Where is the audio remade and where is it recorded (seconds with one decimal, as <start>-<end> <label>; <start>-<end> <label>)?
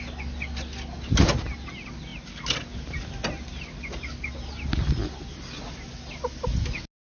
0.0-7.1 recorded